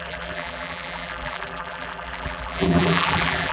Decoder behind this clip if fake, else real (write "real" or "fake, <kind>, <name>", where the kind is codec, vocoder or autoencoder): fake, vocoder, BigVGAN v2